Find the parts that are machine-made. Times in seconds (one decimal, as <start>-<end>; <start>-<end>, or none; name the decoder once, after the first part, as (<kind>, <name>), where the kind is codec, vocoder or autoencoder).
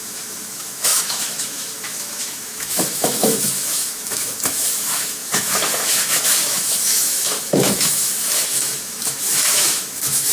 0.0-10.3 (autoencoder, DAC-VAE)